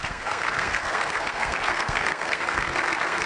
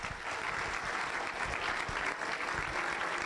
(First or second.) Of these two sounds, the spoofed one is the first